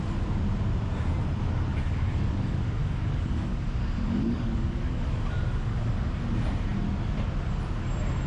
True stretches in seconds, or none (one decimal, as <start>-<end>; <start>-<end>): 0.0-1.7; 6.2-8.3